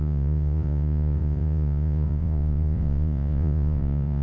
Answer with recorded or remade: remade